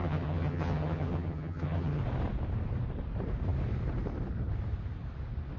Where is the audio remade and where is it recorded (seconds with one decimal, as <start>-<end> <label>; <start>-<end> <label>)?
0.0-2.0 remade; 2.0-5.6 recorded